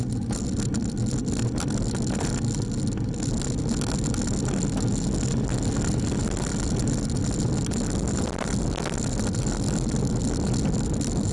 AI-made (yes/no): no